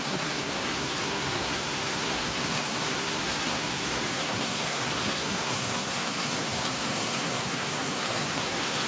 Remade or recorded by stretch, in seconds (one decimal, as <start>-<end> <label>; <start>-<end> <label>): 0.0-8.9 remade